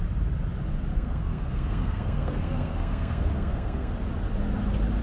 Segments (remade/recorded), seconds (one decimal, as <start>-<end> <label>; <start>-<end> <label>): 0.0-0.9 recorded; 0.9-3.9 remade; 3.9-5.0 recorded